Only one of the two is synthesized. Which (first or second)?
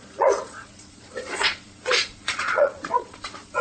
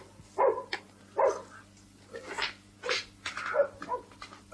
first